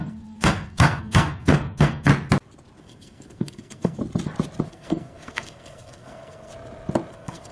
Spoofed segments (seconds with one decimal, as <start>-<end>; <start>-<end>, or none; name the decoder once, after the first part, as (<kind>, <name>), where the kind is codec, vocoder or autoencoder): 0.0-2.1 (codec, SNAC); 2.8-4.0; 4.7-6.5; 7.1-7.5